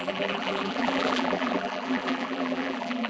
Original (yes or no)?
no